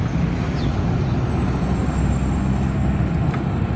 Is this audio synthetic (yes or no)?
no